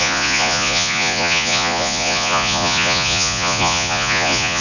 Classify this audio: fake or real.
fake